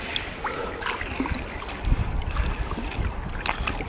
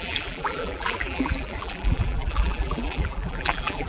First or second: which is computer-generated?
second